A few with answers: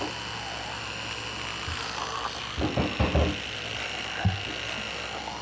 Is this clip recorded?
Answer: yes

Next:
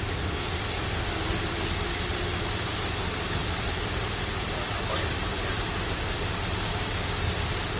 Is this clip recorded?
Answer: yes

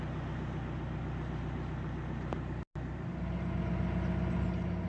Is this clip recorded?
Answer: yes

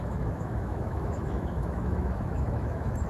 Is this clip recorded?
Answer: no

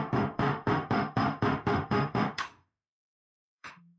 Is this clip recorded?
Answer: no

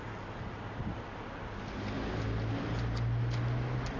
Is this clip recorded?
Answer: yes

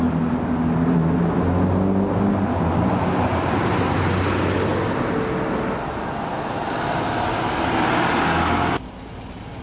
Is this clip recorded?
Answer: yes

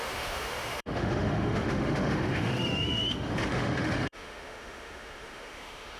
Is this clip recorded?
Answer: no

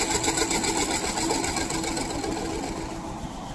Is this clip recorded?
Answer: yes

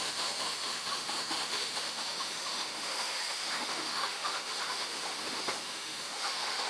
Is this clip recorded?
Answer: no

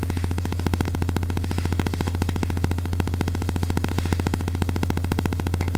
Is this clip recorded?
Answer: no